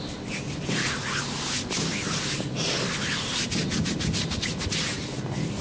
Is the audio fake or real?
real